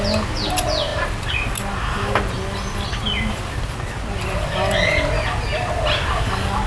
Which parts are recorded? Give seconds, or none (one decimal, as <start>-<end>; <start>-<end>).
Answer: 0.0-6.7